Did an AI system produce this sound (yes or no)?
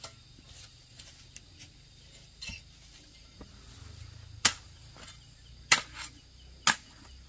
no